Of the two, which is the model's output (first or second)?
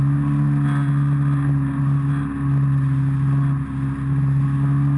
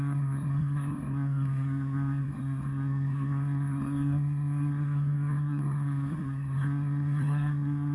second